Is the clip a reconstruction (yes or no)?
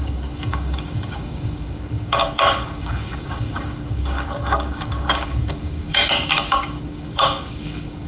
yes